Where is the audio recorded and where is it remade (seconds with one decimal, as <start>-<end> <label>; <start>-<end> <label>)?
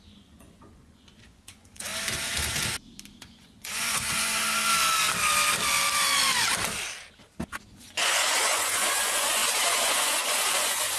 0.0-1.9 remade; 1.9-3.2 recorded; 3.2-4.4 remade; 4.4-7.6 recorded; 7.6-11.0 remade